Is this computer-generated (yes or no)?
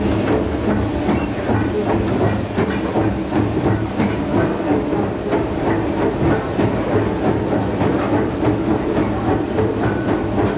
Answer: no